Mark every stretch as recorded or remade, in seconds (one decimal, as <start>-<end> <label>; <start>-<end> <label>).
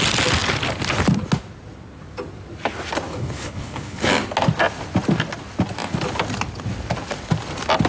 0.0-3.1 recorded; 3.1-4.1 remade; 4.1-7.9 recorded